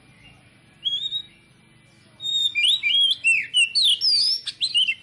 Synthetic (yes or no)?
no